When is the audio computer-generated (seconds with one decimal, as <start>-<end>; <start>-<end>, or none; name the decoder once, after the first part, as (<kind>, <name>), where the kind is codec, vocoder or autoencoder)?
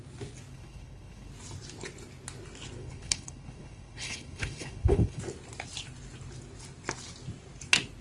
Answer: 0.5-1.3 (codec, HILCodec); 2.8-5.2